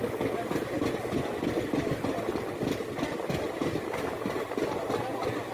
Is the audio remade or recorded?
recorded